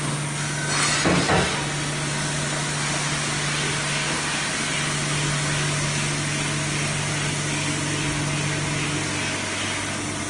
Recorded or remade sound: recorded